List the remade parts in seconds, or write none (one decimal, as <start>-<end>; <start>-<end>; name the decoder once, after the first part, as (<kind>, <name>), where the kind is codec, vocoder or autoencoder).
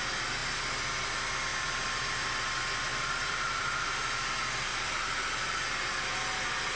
1.5-2.3 (vocoder, BigVGAN v2); 2.9-3.6; 4.7-5.9